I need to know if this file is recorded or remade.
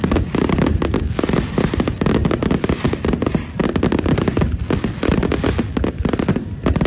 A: recorded